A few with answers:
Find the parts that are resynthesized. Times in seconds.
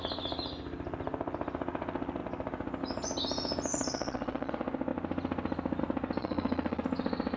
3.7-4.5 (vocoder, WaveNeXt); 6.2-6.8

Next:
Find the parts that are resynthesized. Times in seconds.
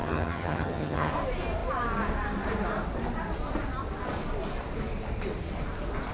0.0-1.1 (vocoder, HiFi-GAN)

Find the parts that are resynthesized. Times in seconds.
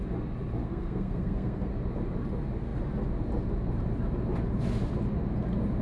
0.6-1.7 (codec, SNAC)